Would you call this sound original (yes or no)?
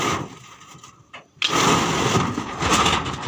yes